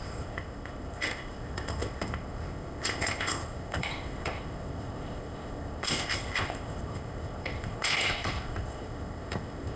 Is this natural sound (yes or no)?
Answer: no